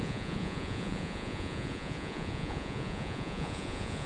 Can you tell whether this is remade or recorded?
remade